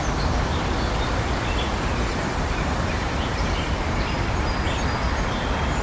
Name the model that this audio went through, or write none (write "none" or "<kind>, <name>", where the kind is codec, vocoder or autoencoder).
none